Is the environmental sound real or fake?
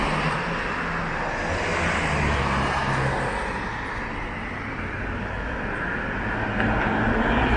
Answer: real